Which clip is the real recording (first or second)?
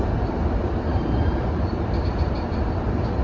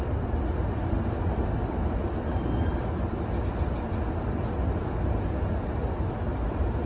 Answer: second